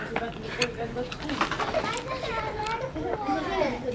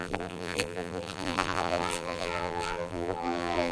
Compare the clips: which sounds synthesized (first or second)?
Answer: second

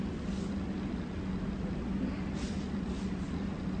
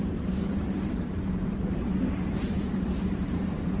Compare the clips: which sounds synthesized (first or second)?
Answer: second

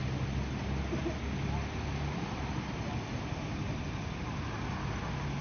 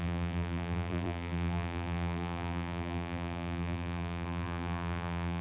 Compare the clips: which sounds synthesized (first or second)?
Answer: second